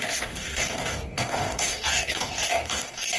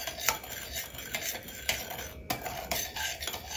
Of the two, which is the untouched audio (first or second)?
second